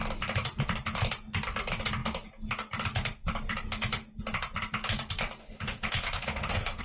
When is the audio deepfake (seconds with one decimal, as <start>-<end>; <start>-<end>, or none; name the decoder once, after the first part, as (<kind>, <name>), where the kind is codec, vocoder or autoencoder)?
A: 5.4-6.8 (autoencoder, DAC-VAE)